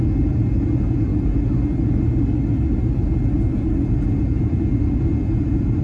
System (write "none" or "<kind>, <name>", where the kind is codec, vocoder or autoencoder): none